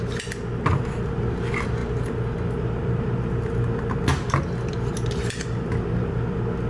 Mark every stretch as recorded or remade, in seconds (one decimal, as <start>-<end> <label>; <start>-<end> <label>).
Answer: 0.0-6.7 recorded